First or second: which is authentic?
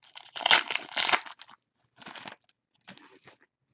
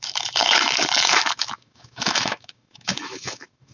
first